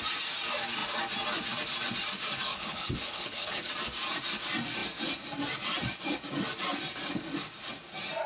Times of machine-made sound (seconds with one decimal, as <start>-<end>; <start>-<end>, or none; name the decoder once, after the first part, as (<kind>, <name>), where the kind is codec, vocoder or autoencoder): 2.5-3.7 (codec, HILCodec)